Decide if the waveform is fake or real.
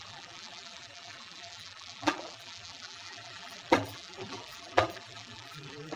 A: fake